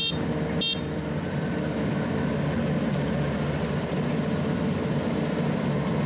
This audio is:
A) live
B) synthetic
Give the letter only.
A